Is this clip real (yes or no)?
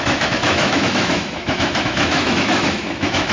no